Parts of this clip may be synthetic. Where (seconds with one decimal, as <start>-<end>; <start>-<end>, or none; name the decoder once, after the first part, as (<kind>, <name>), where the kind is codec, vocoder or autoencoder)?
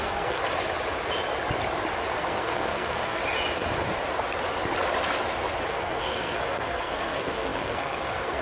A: 0.0-0.4 (codec, SNAC); 2.1-3.2; 5.7-8.4